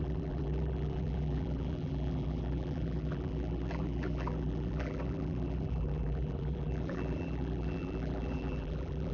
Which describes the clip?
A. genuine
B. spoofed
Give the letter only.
B